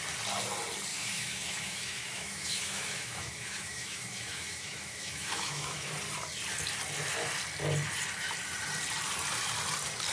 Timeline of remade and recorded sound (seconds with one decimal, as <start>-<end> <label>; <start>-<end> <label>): 0.0-0.9 recorded; 0.9-5.9 remade; 5.9-10.1 recorded